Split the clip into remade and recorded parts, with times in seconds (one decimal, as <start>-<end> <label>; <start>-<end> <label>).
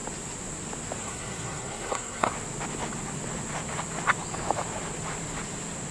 0.0-1.0 recorded; 1.0-2.3 remade; 2.3-5.9 recorded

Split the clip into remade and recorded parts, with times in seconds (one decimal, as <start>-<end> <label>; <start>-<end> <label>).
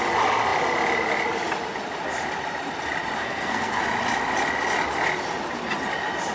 0.0-3.2 recorded; 3.2-3.8 remade; 3.8-6.3 recorded